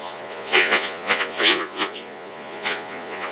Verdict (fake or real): fake